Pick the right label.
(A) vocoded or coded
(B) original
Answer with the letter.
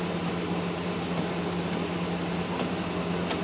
B